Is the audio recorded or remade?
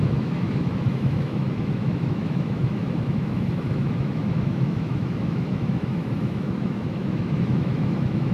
remade